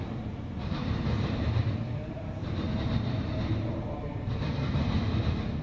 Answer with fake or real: fake